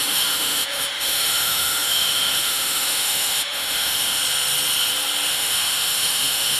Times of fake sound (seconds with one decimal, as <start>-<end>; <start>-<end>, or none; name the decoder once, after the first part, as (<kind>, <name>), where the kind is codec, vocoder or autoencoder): 0.0-4.2 (autoencoder, DAC-VAE); 5.3-6.6